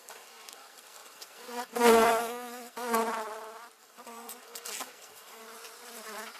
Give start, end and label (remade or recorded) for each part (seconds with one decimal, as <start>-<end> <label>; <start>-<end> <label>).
0.0-3.0 remade; 3.0-3.8 recorded; 3.8-5.4 remade; 5.4-6.4 recorded